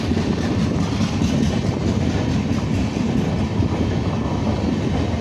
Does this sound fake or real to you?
real